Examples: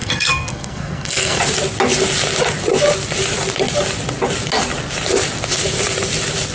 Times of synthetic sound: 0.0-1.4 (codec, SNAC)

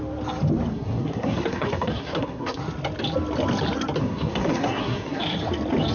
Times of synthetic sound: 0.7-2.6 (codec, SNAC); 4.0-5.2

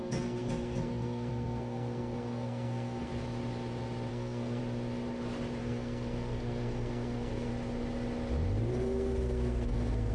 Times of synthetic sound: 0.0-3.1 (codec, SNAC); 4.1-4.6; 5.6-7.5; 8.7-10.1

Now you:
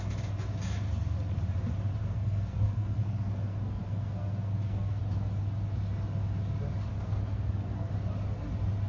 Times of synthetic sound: 2.0-5.0 (codec, SNAC); 6.9-7.9

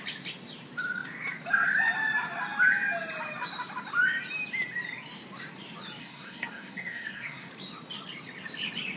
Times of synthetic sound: 6.0-7.5 (codec, SNAC)